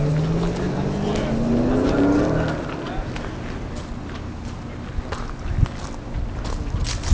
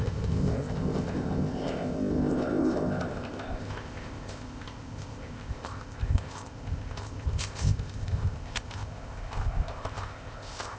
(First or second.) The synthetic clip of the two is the second